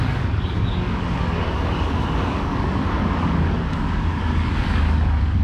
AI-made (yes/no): yes